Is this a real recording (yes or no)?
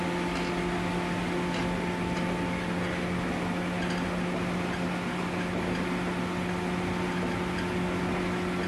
yes